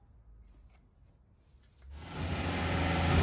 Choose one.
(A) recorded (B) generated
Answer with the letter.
A